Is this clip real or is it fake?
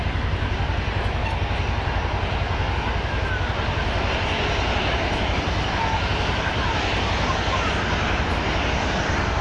real